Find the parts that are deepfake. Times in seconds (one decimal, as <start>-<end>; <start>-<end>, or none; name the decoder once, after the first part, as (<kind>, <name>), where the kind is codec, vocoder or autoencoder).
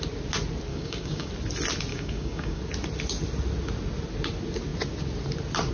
0.7-1.3 (codec, DAC); 1.9-2.6